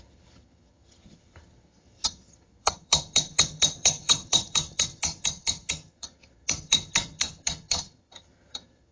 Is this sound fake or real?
fake